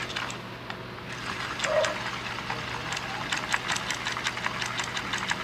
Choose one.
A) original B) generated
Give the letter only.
A